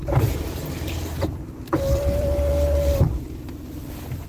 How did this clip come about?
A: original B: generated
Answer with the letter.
B